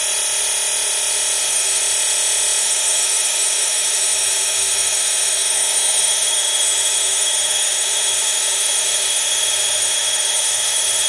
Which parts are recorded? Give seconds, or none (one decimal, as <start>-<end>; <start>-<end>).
0.0-1.4; 1.8-2.6